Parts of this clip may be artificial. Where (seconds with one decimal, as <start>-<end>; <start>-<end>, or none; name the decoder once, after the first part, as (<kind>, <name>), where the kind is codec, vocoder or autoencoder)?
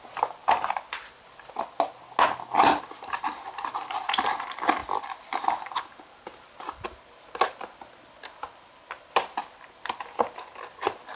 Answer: none